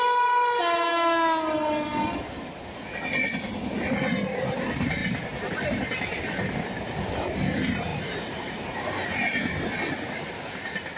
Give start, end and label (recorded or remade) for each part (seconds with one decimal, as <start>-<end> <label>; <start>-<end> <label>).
0.0-5.0 recorded; 5.0-6.2 remade; 6.2-7.9 recorded; 7.9-8.5 remade; 8.5-11.0 recorded